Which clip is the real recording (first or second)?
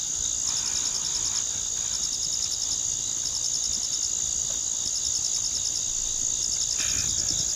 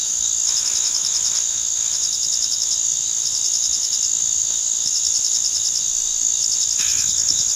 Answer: first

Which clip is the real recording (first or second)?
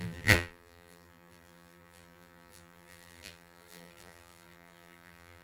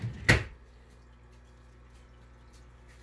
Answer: second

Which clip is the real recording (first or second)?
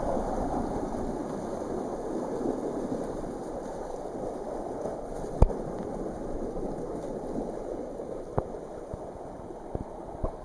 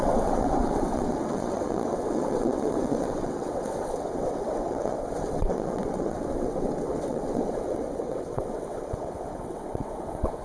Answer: first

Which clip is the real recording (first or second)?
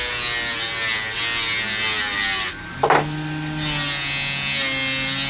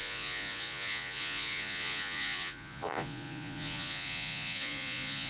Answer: first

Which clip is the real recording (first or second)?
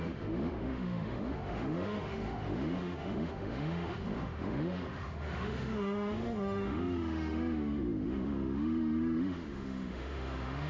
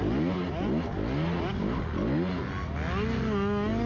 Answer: second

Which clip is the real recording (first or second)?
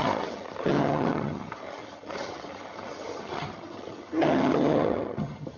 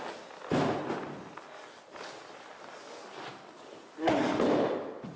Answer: second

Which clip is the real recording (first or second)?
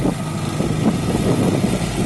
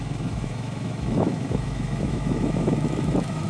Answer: first